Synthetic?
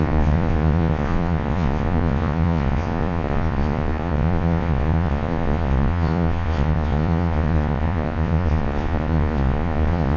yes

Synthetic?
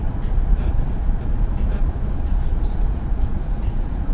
yes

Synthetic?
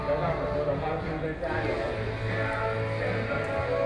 no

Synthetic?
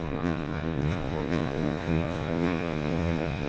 yes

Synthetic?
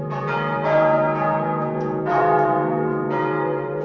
yes